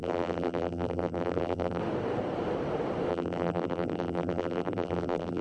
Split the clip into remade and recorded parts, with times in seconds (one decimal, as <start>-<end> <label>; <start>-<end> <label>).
0.0-1.8 remade; 1.8-3.1 recorded; 3.1-5.4 remade